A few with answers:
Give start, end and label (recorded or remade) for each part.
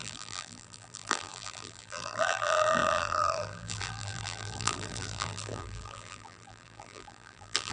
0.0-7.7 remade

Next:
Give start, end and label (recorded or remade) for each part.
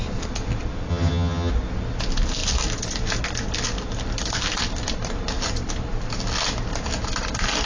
0.0-0.9 recorded; 0.9-1.5 remade; 1.5-7.7 recorded